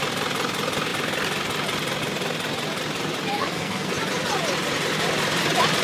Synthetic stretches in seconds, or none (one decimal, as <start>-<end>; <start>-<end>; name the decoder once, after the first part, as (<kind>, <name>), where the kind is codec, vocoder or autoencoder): 3.3-3.9 (codec, SNAC)